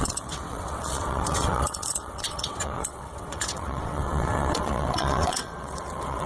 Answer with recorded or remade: remade